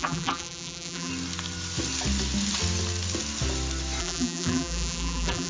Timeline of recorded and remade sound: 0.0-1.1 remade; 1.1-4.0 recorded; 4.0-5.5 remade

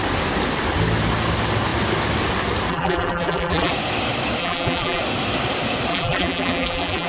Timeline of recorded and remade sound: 0.0-2.7 recorded; 2.7-3.7 remade; 3.7-4.4 recorded; 4.4-5.0 remade; 5.0-5.9 recorded; 5.9-7.1 remade

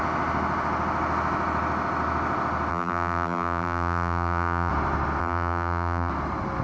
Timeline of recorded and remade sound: 0.0-2.7 recorded; 2.7-4.7 remade; 4.7-5.2 recorded; 5.2-6.1 remade; 6.1-6.6 recorded

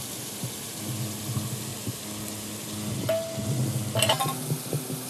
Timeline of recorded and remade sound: 0.0-5.1 recorded